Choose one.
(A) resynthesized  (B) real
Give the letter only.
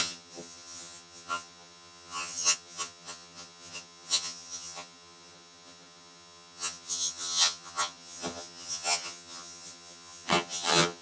A